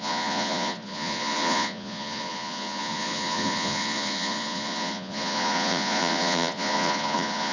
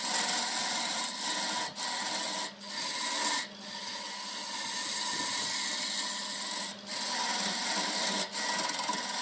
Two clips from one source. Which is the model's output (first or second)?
first